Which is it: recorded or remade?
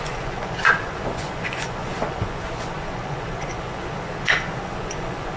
remade